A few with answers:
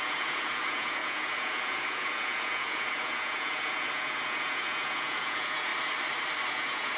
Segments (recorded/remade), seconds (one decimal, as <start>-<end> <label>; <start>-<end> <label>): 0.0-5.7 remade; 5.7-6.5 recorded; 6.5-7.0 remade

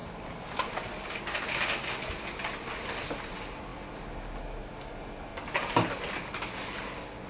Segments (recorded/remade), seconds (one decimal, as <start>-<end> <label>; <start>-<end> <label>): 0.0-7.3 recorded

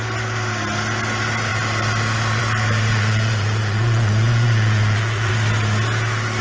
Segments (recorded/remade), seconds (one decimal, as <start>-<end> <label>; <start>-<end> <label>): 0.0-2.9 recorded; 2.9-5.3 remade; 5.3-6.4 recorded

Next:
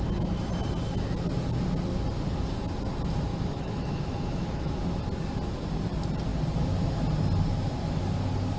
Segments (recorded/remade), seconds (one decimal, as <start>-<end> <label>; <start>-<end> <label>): 0.0-3.3 recorded; 3.3-4.8 remade; 4.8-8.6 recorded

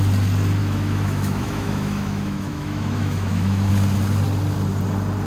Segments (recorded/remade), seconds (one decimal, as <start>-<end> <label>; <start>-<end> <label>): 0.0-0.6 recorded; 0.6-3.7 remade; 3.7-5.3 recorded